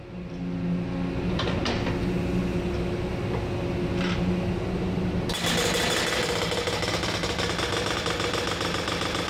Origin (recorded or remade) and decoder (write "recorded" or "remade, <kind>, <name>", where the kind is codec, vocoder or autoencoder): recorded